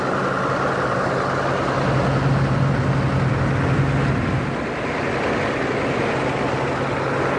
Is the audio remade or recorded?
recorded